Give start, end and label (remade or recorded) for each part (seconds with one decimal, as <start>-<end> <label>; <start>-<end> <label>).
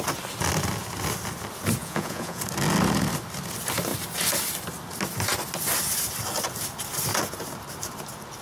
0.0-1.8 recorded; 1.8-2.4 remade; 2.4-8.4 recorded